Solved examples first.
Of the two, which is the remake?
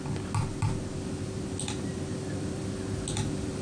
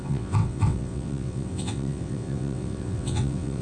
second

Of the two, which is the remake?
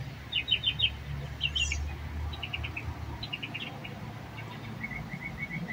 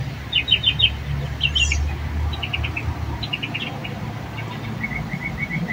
second